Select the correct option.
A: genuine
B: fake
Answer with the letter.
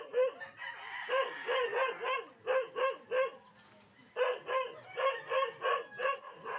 A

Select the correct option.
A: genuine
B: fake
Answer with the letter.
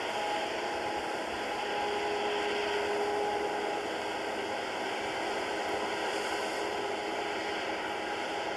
A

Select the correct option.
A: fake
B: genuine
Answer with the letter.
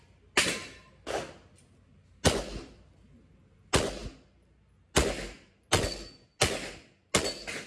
B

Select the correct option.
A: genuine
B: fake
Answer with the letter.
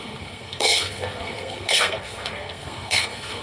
B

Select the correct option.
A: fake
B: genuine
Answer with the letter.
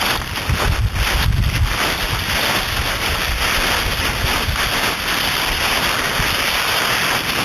B